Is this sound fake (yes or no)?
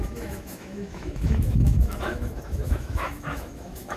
yes